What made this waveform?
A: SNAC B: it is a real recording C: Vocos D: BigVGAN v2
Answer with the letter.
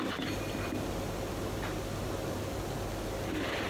B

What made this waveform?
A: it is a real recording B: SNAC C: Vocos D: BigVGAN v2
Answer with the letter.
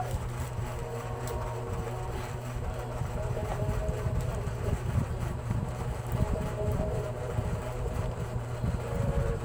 D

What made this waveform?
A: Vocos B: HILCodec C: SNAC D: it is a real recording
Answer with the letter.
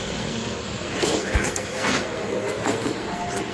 C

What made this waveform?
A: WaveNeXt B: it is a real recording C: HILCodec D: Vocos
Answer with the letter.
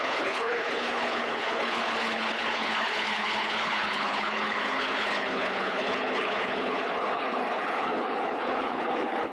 C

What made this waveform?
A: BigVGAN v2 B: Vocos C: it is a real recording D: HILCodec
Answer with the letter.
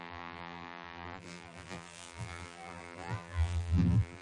A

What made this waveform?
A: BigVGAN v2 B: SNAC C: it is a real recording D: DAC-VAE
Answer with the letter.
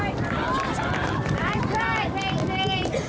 C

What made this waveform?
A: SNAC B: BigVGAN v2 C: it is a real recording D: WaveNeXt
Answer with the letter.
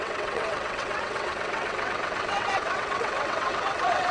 D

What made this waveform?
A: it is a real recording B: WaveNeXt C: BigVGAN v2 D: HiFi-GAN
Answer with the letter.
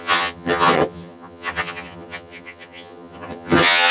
D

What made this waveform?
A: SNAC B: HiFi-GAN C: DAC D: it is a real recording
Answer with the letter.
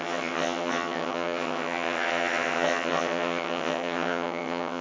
B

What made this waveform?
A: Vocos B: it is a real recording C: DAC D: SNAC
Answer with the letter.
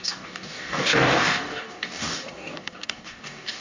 C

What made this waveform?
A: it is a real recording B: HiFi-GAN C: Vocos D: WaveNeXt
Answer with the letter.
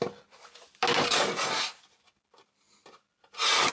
A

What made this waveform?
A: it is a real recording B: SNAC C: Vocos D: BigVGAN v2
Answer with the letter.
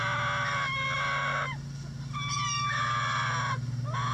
A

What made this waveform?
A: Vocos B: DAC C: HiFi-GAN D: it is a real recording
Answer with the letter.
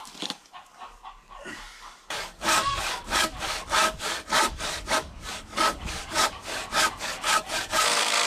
B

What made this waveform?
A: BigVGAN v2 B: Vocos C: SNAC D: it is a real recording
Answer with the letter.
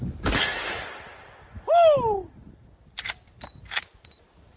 D